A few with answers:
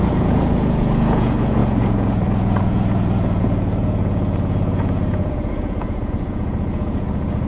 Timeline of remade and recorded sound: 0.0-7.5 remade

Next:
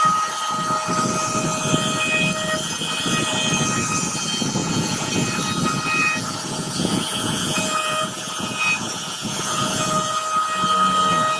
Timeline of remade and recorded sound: 0.0-4.6 recorded; 4.6-5.1 remade; 5.1-6.0 recorded; 6.0-10.2 remade; 10.2-11.4 recorded

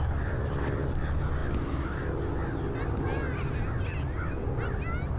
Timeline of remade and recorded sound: 0.0-5.2 recorded

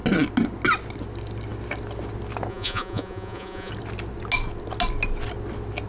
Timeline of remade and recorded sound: 0.0-2.5 recorded; 2.5-3.7 remade; 3.7-5.9 recorded

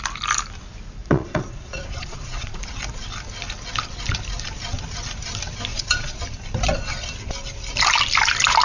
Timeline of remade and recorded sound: 0.0-1.0 recorded; 1.0-2.6 remade; 2.6-5.7 recorded; 5.7-6.2 remade; 6.2-8.6 recorded